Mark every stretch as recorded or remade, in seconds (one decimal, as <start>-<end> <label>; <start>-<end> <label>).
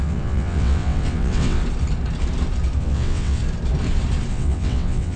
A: 0.0-1.6 remade; 1.6-2.8 recorded; 2.8-3.4 remade; 3.4-4.3 recorded; 4.3-5.2 remade